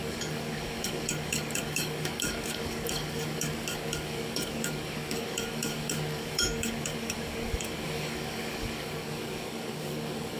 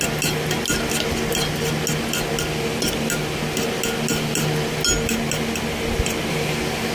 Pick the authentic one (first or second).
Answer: second